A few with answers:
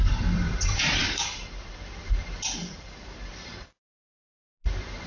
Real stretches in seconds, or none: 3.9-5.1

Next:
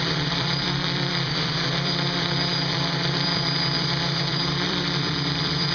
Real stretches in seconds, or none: none

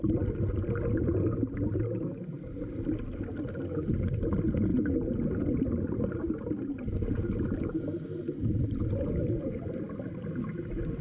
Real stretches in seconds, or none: 0.0-11.0

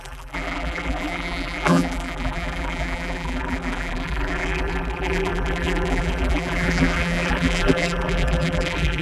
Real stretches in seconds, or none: none

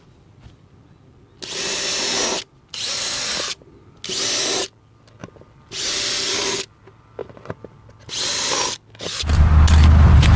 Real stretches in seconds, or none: 0.0-10.4

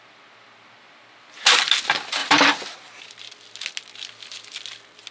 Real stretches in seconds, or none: 0.0-2.2; 3.1-5.1

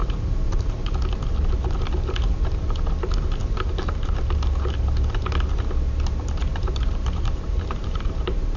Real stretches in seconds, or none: 0.8-3.4; 4.1-6.4

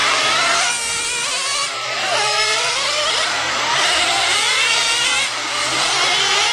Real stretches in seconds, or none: 0.7-1.6; 5.5-6.5